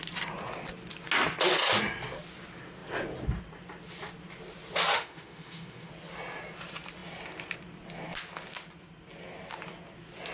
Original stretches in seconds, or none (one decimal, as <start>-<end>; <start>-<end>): 0.0-4.9; 5.9-10.3